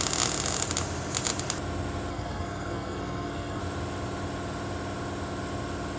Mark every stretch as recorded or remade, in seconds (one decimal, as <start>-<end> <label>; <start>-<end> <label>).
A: 0.0-2.1 recorded; 2.1-3.6 remade; 3.6-6.0 recorded